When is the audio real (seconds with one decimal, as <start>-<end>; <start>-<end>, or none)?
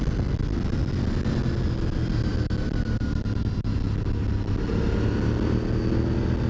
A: 0.0-6.5